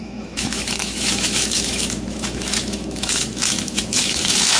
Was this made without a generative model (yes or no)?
no